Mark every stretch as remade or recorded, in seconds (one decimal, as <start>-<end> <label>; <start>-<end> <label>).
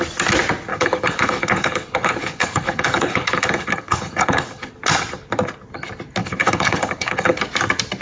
0.0-0.7 recorded; 0.7-4.7 remade; 4.7-6.2 recorded; 6.2-7.4 remade; 7.4-8.0 recorded